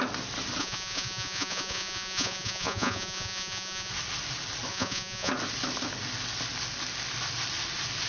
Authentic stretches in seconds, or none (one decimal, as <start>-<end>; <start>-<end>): 0.0-0.6; 3.9-4.7; 5.3-8.1